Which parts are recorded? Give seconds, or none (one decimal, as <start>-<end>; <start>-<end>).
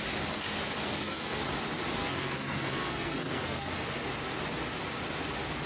0.0-0.8; 1.4-2.0; 3.7-5.7